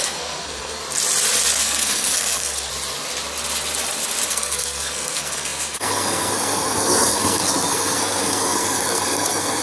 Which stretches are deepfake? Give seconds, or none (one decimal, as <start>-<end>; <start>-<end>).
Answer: 0.0-0.8; 1.6-2.7; 4.3-9.6